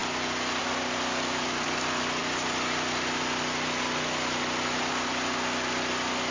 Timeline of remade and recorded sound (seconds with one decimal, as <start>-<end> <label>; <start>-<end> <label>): 0.0-6.3 recorded